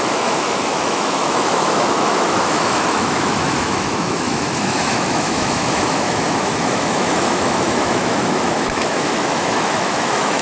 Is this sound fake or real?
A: fake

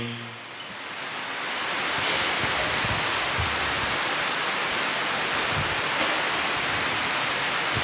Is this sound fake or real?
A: real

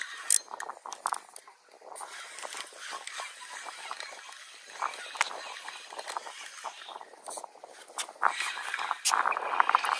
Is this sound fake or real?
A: real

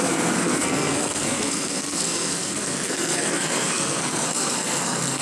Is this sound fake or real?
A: fake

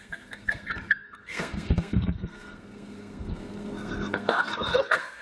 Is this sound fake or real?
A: fake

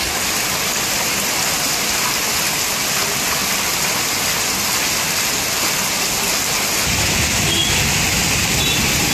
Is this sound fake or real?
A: real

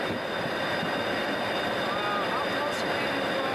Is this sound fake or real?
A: real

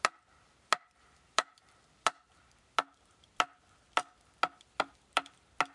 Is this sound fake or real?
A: real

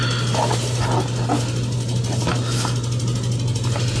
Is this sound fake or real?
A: real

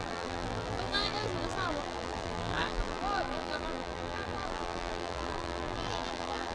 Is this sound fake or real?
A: fake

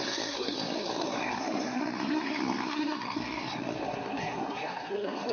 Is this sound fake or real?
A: fake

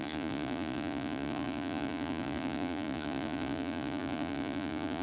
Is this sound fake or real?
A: fake